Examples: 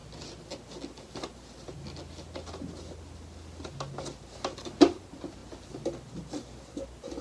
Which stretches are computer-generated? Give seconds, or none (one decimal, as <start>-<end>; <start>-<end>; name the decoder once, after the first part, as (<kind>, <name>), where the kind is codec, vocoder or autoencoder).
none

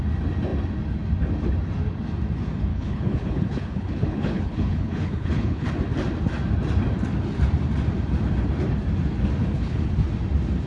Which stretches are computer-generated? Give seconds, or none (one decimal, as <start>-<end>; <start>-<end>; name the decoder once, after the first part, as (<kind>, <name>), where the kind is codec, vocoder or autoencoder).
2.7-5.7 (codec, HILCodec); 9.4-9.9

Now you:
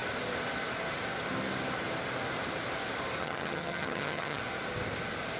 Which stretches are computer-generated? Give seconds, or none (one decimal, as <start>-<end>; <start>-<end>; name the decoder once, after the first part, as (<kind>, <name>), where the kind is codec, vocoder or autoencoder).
3.2-4.4 (vocoder, HiFi-GAN)

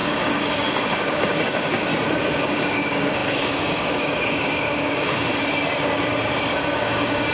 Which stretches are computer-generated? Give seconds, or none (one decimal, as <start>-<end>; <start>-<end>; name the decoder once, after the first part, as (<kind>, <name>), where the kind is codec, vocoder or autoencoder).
0.0-1.9 (codec, DAC); 2.4-5.3; 6.8-7.3

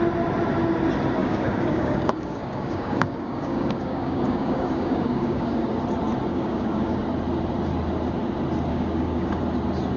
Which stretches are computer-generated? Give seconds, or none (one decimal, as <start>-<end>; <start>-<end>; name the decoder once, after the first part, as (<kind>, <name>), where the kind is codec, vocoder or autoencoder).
1.2-5.8 (codec, DAC); 6.3-7.0; 8.7-9.4